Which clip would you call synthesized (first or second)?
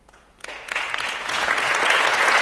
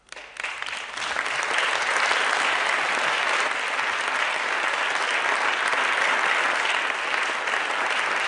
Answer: first